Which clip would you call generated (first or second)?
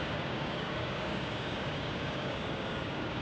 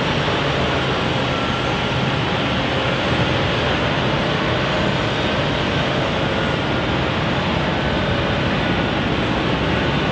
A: first